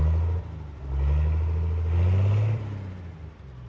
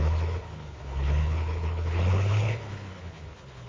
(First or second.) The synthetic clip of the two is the second